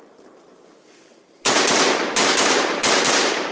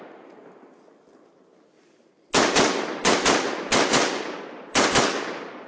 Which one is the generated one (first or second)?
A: first